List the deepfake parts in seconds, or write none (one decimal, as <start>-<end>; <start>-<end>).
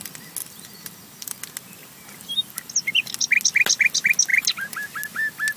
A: 0.4-1.4; 1.8-2.7